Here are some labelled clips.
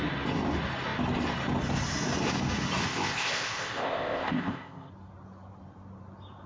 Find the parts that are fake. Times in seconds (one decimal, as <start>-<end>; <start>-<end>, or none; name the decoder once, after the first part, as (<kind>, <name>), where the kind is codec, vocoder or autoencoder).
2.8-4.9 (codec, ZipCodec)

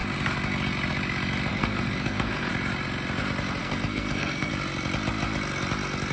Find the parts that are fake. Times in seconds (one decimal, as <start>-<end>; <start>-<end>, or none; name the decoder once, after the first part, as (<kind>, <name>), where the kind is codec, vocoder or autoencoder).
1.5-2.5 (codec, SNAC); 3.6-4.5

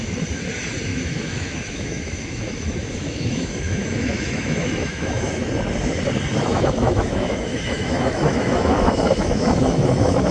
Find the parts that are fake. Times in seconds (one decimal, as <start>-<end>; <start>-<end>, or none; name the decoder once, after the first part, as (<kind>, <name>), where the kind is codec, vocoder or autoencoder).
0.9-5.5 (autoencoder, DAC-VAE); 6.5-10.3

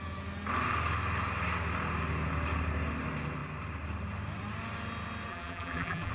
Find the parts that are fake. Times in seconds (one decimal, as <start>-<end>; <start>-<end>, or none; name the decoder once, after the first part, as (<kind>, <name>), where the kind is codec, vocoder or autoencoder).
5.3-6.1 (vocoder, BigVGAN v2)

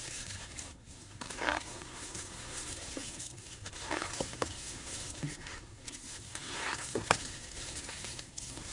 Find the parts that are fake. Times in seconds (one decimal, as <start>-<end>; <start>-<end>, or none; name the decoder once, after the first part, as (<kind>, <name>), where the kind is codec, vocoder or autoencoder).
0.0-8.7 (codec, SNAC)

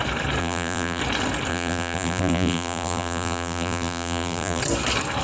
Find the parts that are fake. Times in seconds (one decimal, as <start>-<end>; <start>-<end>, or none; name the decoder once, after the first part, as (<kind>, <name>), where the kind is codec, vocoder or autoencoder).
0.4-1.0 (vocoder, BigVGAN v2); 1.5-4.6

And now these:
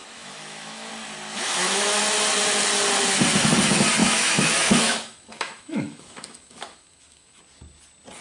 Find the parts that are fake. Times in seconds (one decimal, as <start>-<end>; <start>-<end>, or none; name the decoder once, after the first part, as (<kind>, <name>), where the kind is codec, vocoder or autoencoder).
0.0-0.9 (autoencoder, DAC-VAE); 1.3-2.0; 4.0-7.4

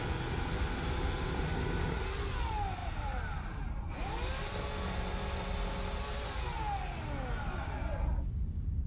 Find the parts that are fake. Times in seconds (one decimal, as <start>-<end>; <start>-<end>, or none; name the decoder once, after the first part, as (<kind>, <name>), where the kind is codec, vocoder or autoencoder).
2.8-3.6 (vocoder, BigVGAN v2)